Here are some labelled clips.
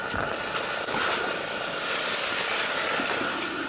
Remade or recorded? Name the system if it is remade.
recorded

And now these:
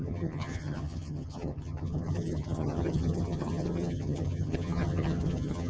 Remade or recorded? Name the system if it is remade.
remade, vocoder, HiFi-GAN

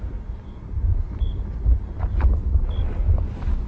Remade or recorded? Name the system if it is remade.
recorded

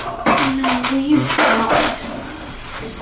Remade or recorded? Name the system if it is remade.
recorded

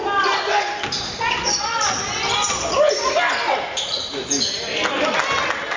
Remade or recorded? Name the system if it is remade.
recorded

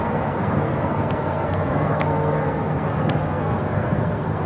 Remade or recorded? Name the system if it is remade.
remade, codec, SNAC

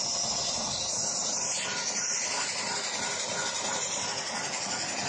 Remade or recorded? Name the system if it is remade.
recorded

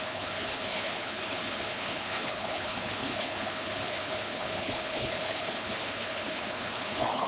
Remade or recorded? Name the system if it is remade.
remade, codec, HILCodec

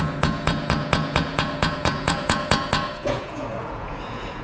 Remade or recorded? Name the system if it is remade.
remade, vocoder, Vocos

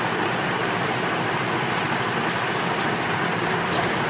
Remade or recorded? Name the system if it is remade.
recorded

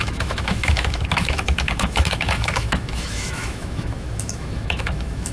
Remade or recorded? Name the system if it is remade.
remade, autoencoder, DAC-VAE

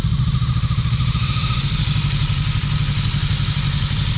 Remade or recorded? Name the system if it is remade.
recorded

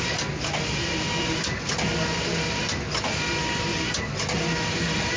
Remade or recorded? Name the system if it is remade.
recorded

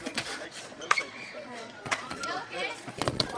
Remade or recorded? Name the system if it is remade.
remade, vocoder, Vocos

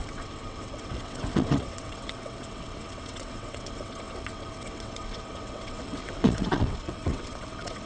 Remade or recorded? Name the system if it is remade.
remade, vocoder, WaveNeXt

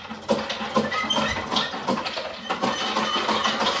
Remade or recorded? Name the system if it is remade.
recorded